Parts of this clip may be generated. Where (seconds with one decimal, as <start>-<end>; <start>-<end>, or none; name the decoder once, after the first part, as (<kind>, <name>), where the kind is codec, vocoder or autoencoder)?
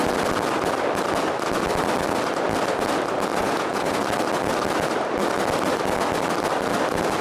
3.4-4.0 (vocoder, Vocos)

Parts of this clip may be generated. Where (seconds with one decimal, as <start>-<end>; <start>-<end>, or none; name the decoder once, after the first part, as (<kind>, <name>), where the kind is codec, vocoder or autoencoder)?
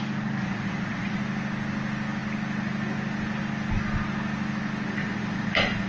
0.4-1.2 (vocoder, Vocos); 5.0-5.9